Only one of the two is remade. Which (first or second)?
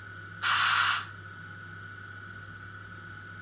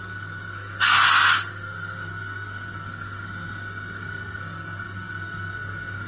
second